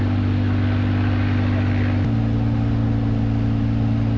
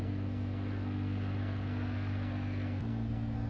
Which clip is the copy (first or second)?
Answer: second